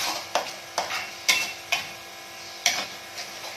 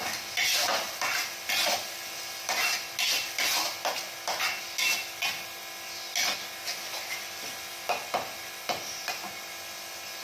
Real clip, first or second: second